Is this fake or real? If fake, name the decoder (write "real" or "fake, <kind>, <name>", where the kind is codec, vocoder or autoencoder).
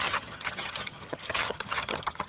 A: fake, vocoder, HiFi-GAN